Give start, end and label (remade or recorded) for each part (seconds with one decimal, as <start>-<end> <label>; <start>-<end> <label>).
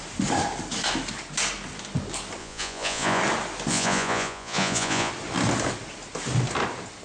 0.0-2.4 recorded; 2.4-3.2 remade; 3.2-3.7 recorded; 3.7-5.1 remade; 5.1-7.0 recorded